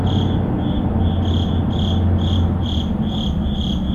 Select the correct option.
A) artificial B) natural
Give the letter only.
B